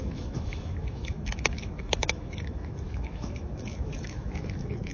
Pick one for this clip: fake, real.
fake